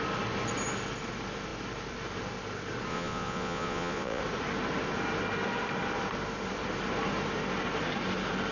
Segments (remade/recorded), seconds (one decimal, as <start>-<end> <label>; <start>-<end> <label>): 0.0-2.9 recorded; 2.9-4.2 remade; 4.2-8.5 recorded